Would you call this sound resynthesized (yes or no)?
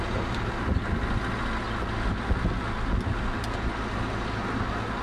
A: no